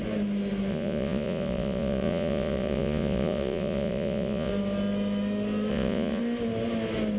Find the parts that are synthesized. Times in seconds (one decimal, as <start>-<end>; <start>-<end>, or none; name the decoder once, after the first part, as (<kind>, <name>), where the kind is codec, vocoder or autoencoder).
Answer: 0.7-4.5 (vocoder, Vocos); 5.7-6.2